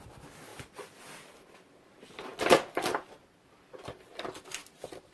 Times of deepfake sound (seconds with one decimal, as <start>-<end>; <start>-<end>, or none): 0.5-1.0